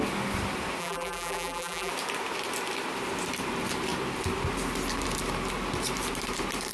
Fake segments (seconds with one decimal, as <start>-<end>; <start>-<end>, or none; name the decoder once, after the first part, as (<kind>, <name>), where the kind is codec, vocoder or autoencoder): 0.8-1.9 (vocoder, BigVGAN v2)